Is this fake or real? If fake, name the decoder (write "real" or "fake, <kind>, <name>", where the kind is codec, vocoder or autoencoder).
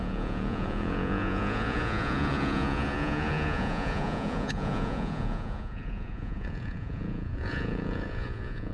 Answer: fake, vocoder, Vocos